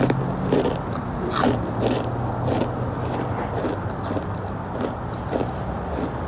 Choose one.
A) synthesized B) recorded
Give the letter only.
B